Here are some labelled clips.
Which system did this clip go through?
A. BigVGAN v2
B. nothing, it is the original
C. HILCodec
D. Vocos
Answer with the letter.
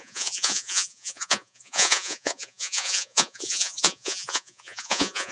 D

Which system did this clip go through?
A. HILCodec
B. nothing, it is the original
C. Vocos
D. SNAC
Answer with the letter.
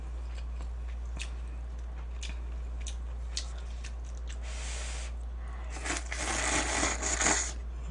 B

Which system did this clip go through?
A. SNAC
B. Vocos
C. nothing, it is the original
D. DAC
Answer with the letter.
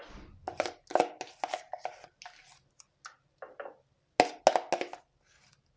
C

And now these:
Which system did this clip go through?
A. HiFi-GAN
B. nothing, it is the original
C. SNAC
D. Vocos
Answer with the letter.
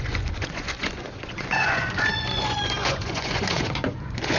D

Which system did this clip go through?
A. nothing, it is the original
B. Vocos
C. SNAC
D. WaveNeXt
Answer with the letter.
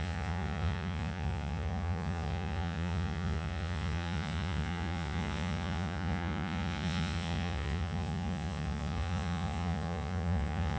B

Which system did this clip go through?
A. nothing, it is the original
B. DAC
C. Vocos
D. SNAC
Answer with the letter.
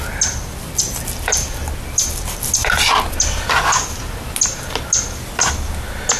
A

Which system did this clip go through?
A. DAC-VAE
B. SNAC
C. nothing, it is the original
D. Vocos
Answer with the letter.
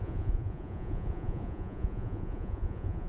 D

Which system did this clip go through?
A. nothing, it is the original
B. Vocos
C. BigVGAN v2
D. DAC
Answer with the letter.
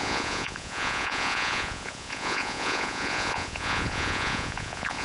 B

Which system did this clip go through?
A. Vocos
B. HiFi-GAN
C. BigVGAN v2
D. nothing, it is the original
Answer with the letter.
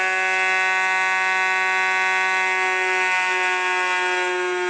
D